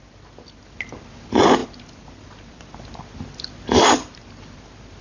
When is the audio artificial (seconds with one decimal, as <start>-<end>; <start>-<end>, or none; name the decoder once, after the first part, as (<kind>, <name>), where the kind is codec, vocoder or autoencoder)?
none